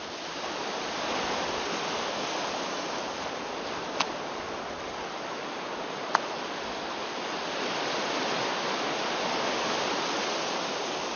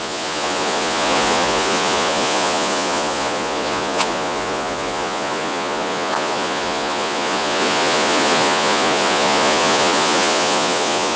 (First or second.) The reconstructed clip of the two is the second